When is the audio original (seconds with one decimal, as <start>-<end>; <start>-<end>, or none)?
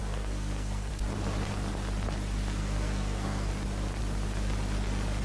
0.9-2.6; 3.5-5.2